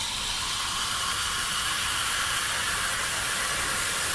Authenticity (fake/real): real